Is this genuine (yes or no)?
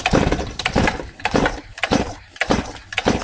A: yes